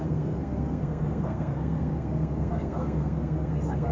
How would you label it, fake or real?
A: fake